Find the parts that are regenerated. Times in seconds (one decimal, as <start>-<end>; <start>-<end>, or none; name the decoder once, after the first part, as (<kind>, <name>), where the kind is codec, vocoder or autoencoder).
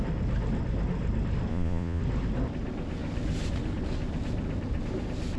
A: 1.5-2.0 (vocoder, Vocos)